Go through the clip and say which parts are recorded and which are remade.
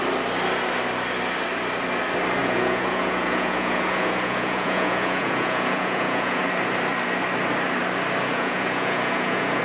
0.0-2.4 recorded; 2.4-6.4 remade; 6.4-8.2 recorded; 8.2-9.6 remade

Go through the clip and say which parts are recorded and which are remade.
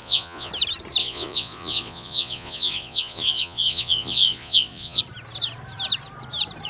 0.0-0.5 remade; 0.5-1.0 recorded; 1.0-5.0 remade; 5.0-6.7 recorded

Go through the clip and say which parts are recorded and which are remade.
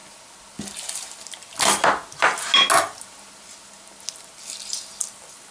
0.0-5.5 recorded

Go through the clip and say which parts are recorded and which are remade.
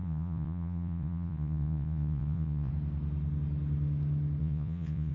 0.0-2.7 remade; 2.7-4.4 recorded; 4.4-5.1 remade